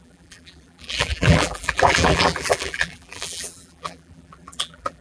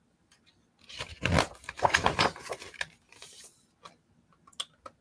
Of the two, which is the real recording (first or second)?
second